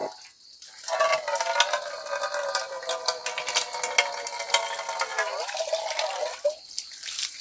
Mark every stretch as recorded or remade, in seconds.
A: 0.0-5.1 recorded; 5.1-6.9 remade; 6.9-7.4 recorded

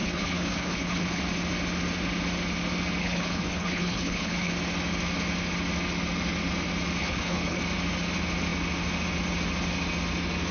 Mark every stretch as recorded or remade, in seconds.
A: 0.0-1.2 remade; 1.2-3.0 recorded; 3.0-4.5 remade; 4.5-7.0 recorded; 7.0-7.6 remade; 7.6-10.5 recorded

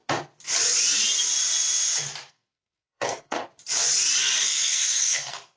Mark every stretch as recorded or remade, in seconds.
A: 0.0-2.3 recorded; 2.3-3.4 remade; 3.4-4.2 recorded; 4.2-5.6 remade